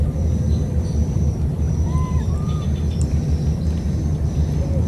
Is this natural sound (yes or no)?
no